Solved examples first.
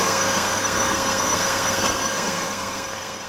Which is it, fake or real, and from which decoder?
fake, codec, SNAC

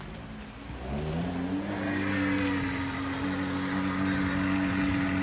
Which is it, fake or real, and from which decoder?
real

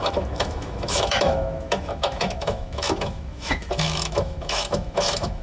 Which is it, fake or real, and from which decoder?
fake, autoencoder, DAC-VAE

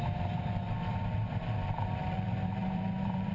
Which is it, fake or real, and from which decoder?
fake, vocoder, BigVGAN v2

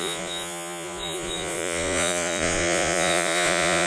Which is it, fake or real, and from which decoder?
fake, vocoder, Vocos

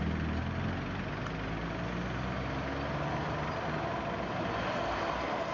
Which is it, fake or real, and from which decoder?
real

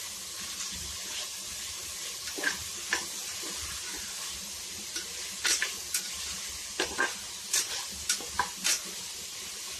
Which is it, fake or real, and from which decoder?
real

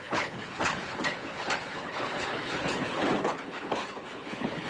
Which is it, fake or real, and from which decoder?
fake, codec, HILCodec